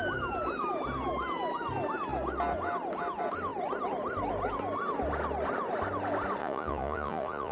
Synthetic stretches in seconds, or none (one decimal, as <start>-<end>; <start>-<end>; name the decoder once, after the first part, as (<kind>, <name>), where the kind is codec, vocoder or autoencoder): 6.4-7.5 (vocoder, Vocos)